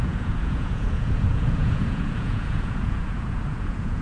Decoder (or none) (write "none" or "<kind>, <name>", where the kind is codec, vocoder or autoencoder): vocoder, Vocos